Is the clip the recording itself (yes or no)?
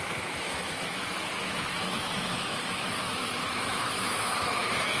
no